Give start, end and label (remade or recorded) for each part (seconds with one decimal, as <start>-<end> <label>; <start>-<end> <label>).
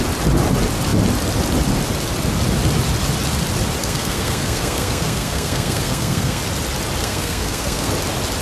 0.0-3.8 recorded; 3.8-6.4 remade; 6.4-7.0 recorded; 7.0-7.9 remade; 7.9-8.4 recorded